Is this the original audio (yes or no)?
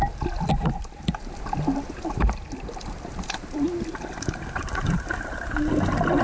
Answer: yes